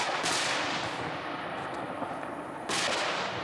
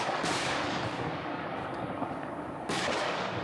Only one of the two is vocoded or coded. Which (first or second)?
second